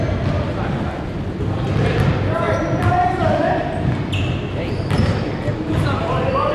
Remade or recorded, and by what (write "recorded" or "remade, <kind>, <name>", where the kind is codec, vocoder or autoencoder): recorded